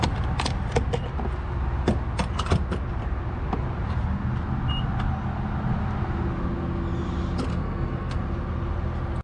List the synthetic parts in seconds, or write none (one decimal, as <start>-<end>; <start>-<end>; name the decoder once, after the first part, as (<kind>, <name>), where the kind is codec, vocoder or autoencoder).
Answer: 7.5-8.2 (codec, SNAC)